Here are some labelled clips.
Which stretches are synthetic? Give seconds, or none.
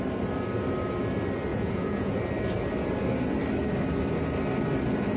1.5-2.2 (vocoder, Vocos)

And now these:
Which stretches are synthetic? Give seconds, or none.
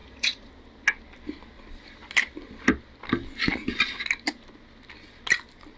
0.0-0.5 (vocoder, Vocos)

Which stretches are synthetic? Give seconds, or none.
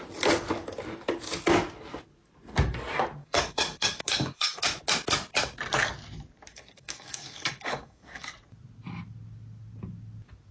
3.2-4.6 (codec, DAC); 6.5-8.3